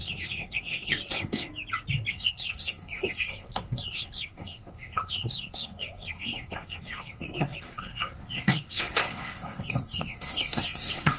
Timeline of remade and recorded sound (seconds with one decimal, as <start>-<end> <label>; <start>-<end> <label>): 0.0-1.5 remade; 1.5-2.1 recorded; 2.1-11.2 remade